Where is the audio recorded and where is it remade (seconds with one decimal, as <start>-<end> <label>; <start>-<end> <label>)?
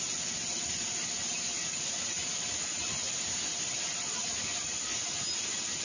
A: 0.0-1.6 recorded; 1.6-2.2 remade; 2.2-5.8 recorded